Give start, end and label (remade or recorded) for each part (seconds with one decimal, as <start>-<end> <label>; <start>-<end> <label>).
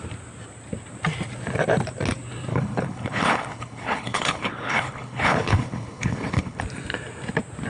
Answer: 0.0-2.5 recorded; 2.5-6.6 remade; 6.6-7.7 recorded